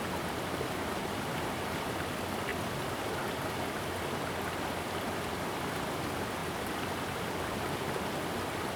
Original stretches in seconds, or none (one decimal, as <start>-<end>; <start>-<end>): 0.0-6.4; 7.9-8.8